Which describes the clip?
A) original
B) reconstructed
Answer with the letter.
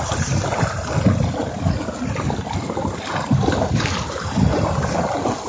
A